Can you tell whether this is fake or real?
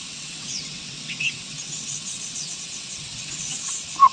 fake